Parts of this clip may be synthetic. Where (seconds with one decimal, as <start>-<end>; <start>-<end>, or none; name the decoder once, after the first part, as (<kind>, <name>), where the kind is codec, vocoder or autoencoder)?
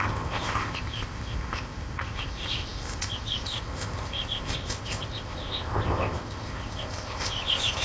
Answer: 0.0-7.8 (codec, ZipCodec)